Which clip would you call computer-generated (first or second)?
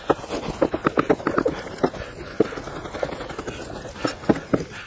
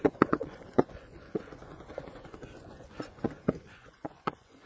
second